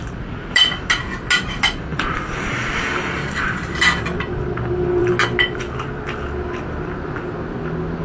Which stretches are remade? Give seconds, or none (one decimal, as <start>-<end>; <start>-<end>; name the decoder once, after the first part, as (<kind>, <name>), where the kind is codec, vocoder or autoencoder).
1.9-5.1 (vocoder, BigVGAN v2)